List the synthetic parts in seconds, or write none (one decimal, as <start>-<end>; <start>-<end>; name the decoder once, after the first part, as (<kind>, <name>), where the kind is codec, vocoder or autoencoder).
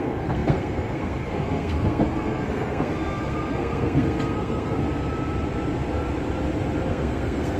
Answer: 0.0-4.8 (codec, SNAC); 6.9-7.6